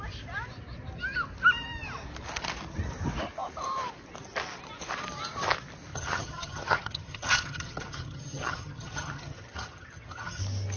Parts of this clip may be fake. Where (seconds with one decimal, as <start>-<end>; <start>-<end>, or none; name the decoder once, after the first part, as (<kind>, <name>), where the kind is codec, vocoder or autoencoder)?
5.9-10.4 (vocoder, HiFi-GAN)